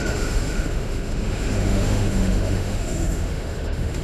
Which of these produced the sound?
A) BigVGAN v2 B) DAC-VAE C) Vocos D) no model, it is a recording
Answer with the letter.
B